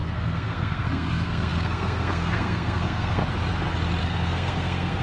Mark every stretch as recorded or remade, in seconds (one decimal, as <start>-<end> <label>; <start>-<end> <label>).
0.0-3.2 remade; 3.2-4.0 recorded; 4.0-5.0 remade

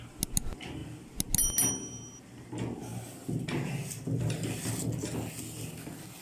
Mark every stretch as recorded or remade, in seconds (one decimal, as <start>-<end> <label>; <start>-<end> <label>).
0.0-6.2 recorded

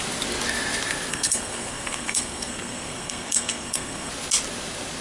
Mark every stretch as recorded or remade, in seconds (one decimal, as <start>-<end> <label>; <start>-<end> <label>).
0.0-1.1 recorded; 1.1-4.1 remade; 4.1-5.0 recorded

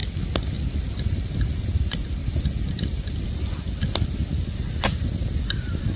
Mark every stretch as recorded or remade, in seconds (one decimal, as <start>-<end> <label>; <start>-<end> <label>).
0.0-6.0 recorded

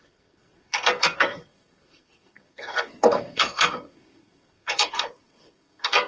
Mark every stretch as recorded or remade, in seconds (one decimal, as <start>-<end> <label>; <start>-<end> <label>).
0.0-6.1 remade

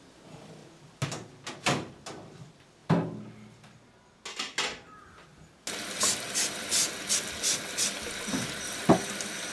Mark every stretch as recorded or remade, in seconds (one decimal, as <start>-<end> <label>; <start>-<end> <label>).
0.0-9.5 recorded